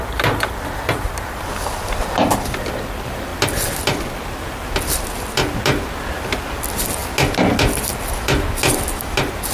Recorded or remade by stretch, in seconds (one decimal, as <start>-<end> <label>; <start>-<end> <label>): 0.0-9.5 recorded

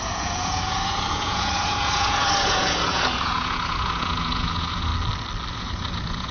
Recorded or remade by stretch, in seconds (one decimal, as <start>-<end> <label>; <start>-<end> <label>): 0.0-4.9 remade; 4.9-5.5 recorded; 5.5-6.3 remade